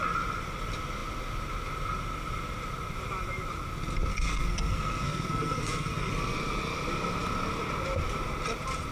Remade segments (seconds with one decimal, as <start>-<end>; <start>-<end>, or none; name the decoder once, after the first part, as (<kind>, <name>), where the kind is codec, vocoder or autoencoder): 4.1-6.1 (codec, SNAC)